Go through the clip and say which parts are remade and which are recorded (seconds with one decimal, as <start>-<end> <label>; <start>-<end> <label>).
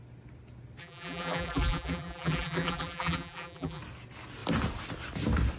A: 0.0-0.8 recorded; 0.8-3.8 remade; 3.8-5.6 recorded